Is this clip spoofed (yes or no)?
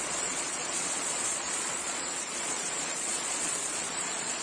yes